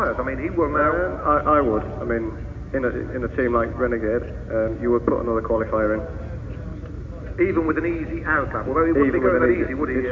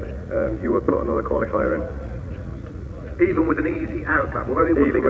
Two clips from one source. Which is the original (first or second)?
first